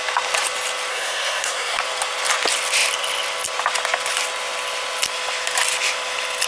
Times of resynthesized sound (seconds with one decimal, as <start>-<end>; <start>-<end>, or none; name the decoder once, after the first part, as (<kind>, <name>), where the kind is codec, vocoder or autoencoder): 0.9-1.8 (codec, SNAC)